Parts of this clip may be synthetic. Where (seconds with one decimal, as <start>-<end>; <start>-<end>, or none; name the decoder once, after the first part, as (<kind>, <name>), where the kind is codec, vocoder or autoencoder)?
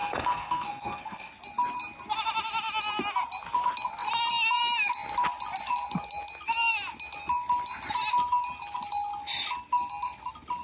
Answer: 0.0-1.3 (codec, SNAC)